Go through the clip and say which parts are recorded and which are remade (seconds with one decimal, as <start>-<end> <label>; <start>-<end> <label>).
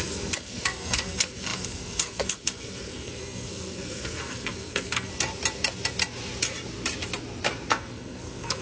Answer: 0.0-5.1 remade; 5.1-7.7 recorded; 7.7-8.6 remade